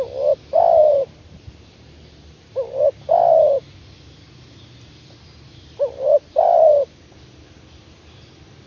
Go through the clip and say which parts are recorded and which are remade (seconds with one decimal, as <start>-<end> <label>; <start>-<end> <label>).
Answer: 0.0-0.8 recorded; 0.8-2.8 remade; 2.8-5.5 recorded; 5.5-6.7 remade; 6.7-8.7 recorded